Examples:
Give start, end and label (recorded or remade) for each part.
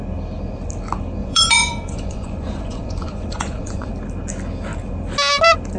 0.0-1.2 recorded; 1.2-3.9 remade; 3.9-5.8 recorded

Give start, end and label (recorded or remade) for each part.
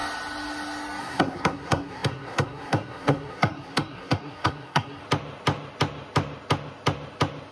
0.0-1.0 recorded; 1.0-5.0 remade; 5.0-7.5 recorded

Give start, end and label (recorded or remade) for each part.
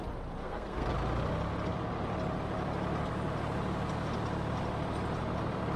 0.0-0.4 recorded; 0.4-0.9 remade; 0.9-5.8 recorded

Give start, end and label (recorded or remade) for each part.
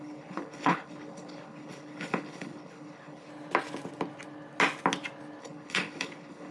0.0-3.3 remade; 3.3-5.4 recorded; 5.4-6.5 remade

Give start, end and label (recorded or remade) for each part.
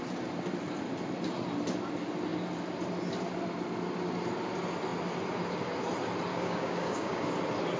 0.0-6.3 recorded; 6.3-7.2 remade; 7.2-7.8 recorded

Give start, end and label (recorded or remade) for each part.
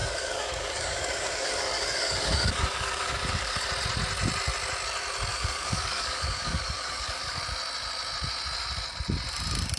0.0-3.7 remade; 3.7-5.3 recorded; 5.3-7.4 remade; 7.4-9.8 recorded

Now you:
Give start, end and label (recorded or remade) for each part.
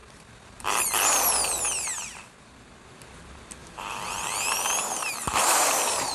0.0-3.6 recorded; 3.6-6.1 remade